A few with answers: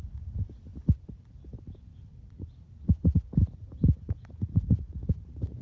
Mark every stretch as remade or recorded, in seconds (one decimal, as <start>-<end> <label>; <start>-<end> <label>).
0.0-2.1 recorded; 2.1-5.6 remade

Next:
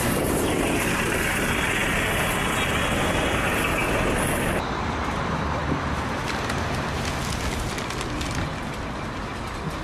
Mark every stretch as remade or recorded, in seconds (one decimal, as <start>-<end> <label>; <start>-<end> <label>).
0.0-9.8 recorded

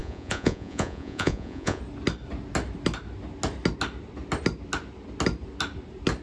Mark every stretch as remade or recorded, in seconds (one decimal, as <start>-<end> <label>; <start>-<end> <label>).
0.0-1.8 remade; 1.8-6.2 recorded